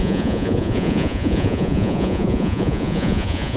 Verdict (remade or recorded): remade